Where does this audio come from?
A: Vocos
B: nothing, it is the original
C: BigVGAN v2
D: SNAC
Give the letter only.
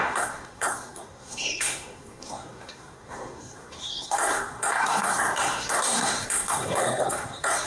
D